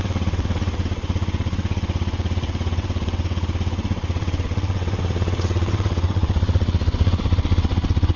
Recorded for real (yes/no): no